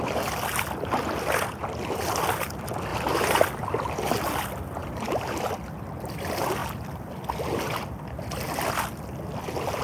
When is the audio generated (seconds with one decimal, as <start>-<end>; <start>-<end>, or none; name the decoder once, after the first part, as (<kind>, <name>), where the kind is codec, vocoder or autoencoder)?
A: 2.9-3.4 (vocoder, BigVGAN v2); 4.8-5.5